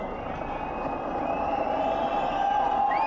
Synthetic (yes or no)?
no